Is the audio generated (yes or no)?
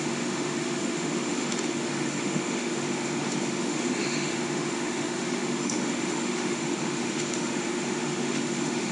yes